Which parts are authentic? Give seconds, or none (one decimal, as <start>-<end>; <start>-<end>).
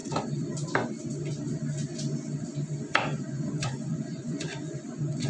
0.0-3.2